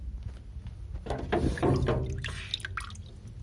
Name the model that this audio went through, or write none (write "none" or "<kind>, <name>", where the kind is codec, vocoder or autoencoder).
none